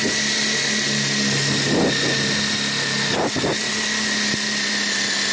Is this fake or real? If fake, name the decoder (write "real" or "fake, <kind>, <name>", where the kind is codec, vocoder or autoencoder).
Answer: real